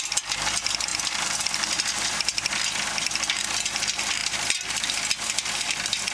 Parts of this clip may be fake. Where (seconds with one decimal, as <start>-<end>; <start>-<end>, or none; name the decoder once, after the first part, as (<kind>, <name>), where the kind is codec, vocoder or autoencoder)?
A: none